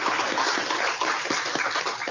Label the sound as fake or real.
real